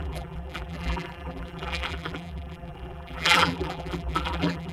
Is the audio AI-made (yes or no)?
yes